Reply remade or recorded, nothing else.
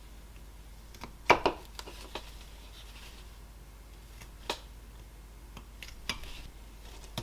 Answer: recorded